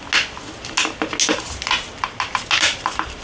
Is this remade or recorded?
recorded